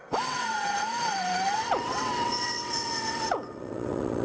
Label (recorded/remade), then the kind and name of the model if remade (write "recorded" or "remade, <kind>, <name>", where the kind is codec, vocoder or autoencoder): remade, vocoder, WaveNeXt